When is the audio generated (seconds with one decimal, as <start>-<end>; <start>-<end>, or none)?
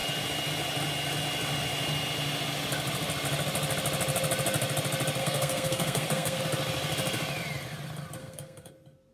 5.2-6.4; 8.2-8.7